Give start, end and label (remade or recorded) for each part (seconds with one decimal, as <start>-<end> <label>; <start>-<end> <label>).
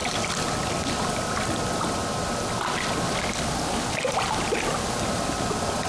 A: 0.0-0.7 recorded; 0.7-2.0 remade; 2.0-5.5 recorded; 5.5-5.9 remade